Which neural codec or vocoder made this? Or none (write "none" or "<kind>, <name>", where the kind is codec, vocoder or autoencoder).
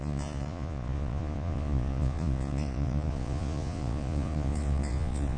vocoder, Vocos